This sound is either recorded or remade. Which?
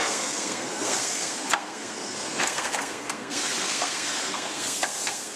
remade